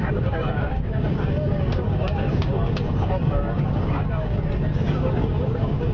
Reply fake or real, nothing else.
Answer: fake